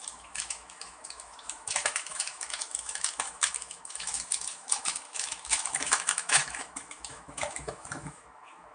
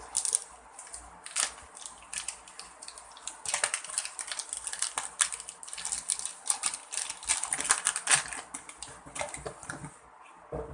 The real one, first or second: second